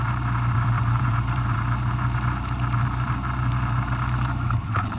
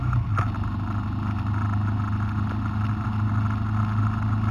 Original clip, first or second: second